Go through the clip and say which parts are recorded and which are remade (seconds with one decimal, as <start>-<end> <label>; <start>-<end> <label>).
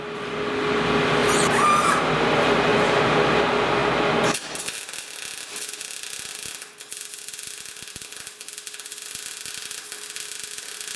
0.0-1.2 recorded; 1.2-2.1 remade; 2.1-2.7 recorded; 2.7-3.2 remade; 3.2-11.0 recorded